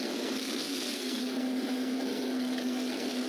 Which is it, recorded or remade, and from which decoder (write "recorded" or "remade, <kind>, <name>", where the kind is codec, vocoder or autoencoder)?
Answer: remade, codec, SNAC